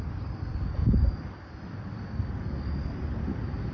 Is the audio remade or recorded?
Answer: recorded